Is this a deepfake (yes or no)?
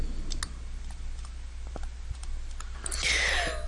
no